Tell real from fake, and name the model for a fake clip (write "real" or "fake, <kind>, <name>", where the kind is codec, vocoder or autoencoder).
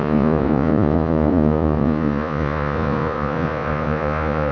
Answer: fake, vocoder, Vocos